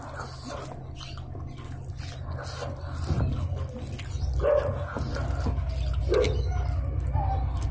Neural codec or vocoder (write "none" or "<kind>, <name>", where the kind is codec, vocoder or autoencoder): none